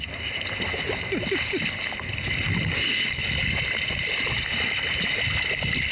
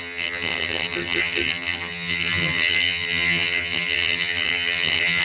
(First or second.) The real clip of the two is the first